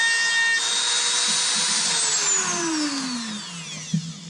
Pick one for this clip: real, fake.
real